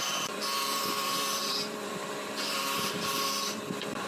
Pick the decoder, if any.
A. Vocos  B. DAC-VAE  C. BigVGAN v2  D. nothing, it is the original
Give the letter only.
C